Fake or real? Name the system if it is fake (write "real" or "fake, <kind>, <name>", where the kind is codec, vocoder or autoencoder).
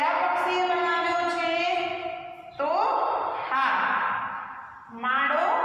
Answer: real